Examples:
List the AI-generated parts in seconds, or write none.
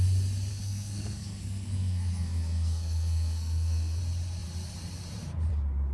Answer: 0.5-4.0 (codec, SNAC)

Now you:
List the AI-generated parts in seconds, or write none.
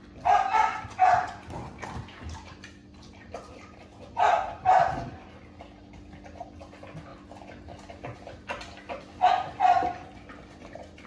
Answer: none